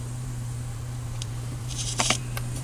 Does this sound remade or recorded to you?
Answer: remade